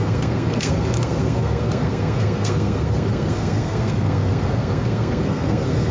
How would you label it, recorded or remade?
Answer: remade